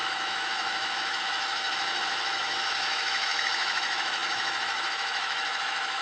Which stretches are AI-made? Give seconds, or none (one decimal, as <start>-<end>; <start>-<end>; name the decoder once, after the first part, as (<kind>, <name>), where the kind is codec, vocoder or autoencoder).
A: 0.0-6.0 (autoencoder, DAC-VAE)